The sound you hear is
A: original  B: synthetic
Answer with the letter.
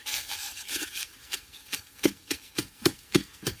B